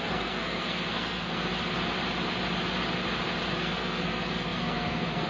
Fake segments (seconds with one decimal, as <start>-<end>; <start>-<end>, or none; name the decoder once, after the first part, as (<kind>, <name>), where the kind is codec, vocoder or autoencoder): 0.0-1.5 (codec, SNAC); 3.6-5.3